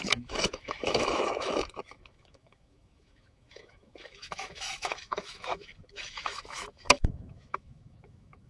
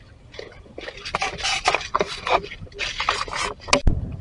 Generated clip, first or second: first